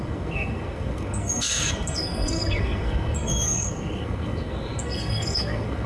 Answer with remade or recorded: remade